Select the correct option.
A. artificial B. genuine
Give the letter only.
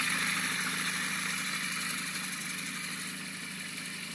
B